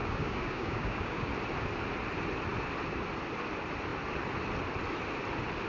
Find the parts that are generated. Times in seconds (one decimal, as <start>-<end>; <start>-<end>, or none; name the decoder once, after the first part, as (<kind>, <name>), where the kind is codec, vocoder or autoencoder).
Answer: 0.0-1.3 (codec, DAC)